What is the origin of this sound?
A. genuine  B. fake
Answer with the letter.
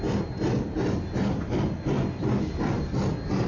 A